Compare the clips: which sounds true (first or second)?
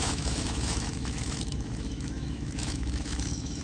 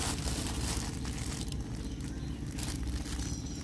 second